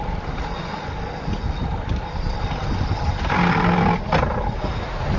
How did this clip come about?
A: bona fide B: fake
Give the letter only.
A